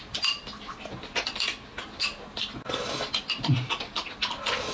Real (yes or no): yes